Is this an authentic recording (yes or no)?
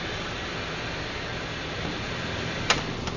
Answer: yes